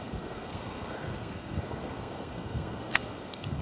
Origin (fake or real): fake